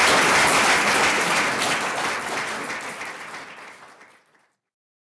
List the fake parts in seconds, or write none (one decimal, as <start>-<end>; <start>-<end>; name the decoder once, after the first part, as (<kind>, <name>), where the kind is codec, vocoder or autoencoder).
3.0-5.0 (vocoder, BigVGAN v2)